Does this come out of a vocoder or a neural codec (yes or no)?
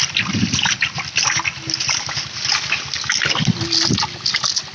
no